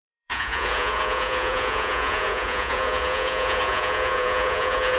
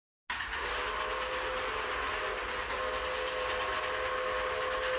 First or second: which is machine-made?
first